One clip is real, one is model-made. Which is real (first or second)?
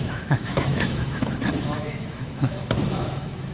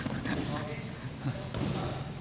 second